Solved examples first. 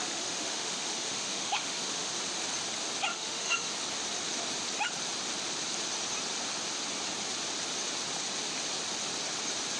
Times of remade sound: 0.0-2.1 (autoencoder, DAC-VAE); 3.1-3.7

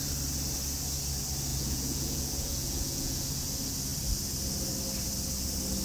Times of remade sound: 1.5-3.2 (vocoder, Vocos)

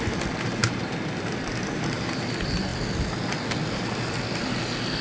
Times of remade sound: 0.6-2.2 (vocoder, BigVGAN v2)

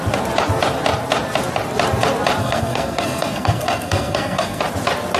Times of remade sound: 2.4-4.6 (codec, SNAC)

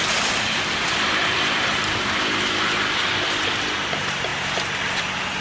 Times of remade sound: 0.0-4.3 (vocoder, BigVGAN v2); 5.0-5.4

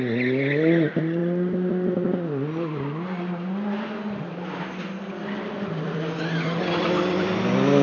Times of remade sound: none

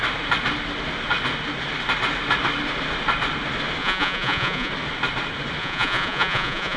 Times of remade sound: 3.8-4.7 (vocoder, Vocos); 5.6-6.8

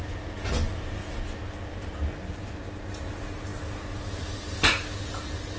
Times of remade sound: none